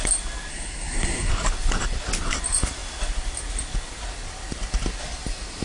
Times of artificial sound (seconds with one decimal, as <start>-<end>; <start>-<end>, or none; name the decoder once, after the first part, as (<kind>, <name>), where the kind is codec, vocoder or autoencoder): 0.5-1.3 (codec, SNAC)